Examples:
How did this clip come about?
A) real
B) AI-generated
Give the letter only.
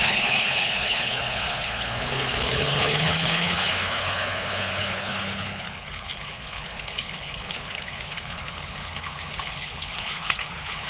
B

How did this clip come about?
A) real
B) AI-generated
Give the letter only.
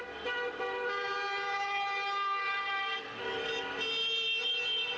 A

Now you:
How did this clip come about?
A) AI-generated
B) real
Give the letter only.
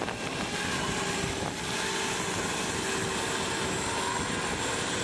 B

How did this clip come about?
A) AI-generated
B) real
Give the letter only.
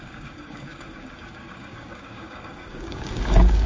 A